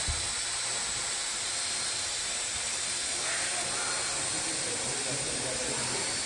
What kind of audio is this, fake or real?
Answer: real